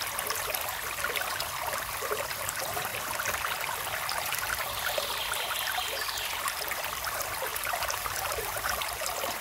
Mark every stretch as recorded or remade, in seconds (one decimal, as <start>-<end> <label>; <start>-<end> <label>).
0.0-7.5 recorded; 7.5-8.8 remade; 8.8-9.4 recorded